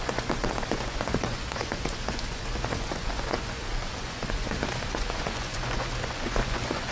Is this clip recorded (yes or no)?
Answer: no